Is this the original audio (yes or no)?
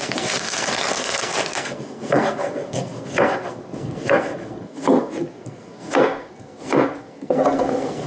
no